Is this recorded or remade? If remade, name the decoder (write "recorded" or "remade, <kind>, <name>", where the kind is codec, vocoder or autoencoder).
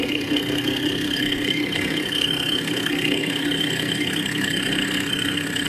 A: remade, codec, SNAC